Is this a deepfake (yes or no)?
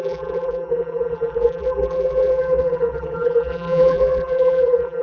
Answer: yes